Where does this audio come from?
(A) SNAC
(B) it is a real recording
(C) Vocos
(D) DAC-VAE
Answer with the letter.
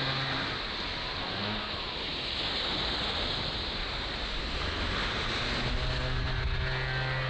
B